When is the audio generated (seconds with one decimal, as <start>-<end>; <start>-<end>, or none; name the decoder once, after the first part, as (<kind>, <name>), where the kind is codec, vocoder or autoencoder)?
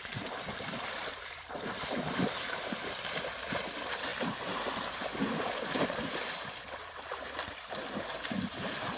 0.0-9.0 (vocoder, BigVGAN v2)